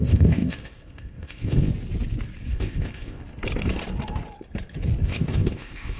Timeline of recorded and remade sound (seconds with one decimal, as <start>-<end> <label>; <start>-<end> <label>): 0.0-1.7 remade; 1.7-2.5 recorded; 2.5-3.2 remade; 3.2-5.0 recorded; 5.0-6.0 remade